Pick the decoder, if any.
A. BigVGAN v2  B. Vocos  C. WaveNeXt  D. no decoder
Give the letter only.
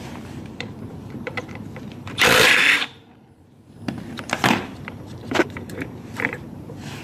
A